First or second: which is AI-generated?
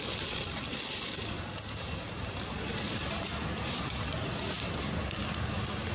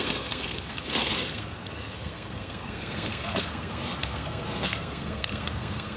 second